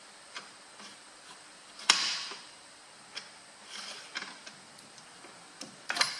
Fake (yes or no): yes